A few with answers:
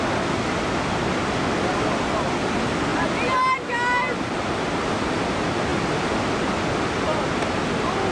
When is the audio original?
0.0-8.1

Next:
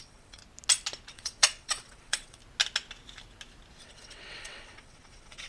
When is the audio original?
0.4-1.1; 2.4-3.8